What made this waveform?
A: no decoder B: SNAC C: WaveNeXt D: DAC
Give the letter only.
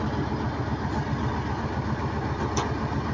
A